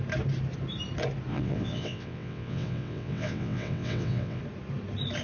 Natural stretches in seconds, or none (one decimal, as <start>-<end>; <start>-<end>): 0.0-1.3; 4.4-5.2